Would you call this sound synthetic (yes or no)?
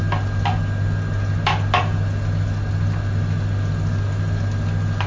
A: no